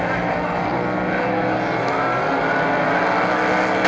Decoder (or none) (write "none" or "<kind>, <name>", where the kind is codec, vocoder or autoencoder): none